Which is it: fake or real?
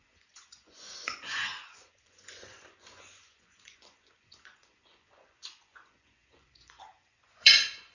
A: fake